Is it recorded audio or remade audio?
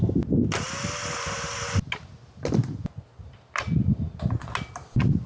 recorded